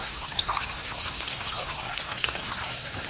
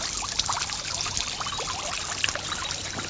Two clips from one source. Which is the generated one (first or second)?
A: first